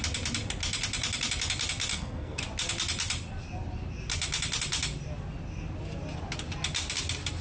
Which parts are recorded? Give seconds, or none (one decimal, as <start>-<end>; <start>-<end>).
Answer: 0.0-1.9; 2.4-7.4